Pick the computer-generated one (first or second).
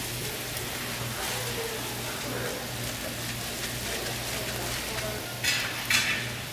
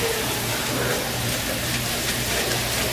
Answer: second